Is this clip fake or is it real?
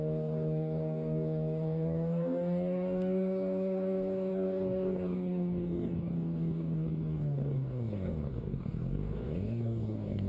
fake